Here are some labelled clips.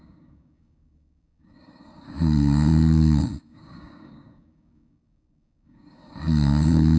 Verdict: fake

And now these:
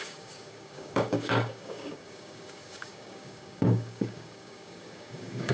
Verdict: fake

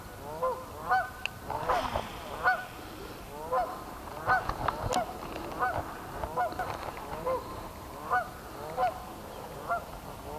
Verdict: real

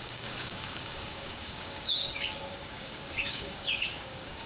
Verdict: fake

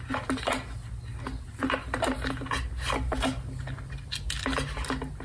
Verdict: real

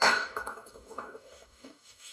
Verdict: fake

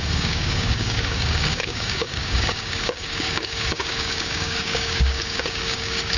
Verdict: fake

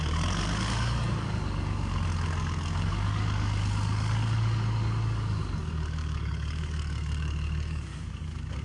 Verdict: fake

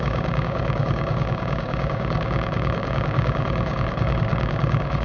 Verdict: fake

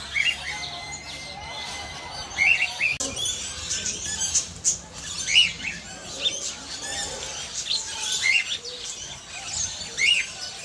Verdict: real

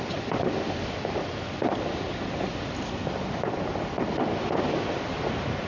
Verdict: real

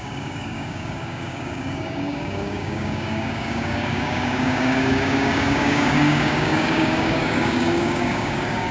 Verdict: fake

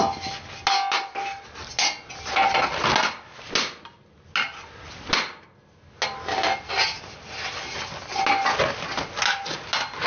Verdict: real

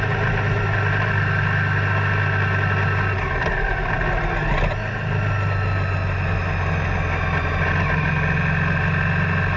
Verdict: real